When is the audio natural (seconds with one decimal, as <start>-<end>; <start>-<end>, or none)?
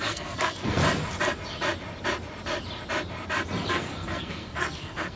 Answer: 0.8-3.7